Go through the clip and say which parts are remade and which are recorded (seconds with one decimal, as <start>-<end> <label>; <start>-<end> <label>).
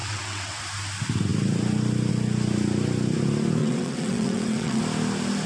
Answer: 0.0-0.6 remade; 0.6-3.6 recorded; 3.6-4.8 remade; 4.8-5.5 recorded